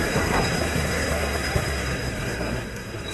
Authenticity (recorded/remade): remade